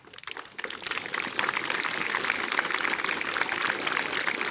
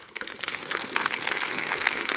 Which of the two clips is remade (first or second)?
second